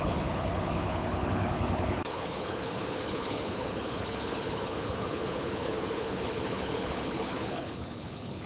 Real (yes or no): no